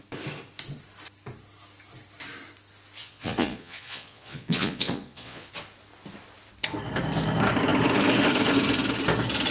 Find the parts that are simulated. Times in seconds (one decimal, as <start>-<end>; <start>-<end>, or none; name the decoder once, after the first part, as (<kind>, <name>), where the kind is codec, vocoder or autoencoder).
3.0-5.5 (vocoder, Vocos)